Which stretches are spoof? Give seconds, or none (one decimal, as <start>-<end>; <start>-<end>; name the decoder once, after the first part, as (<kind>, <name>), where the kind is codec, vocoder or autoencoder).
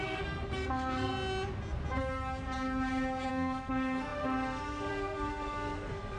0.0-1.1 (codec, SNAC); 3.3-6.2